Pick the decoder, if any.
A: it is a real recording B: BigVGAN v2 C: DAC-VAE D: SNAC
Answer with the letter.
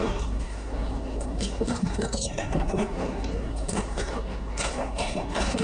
D